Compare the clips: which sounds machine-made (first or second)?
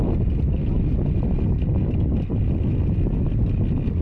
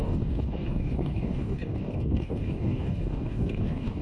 second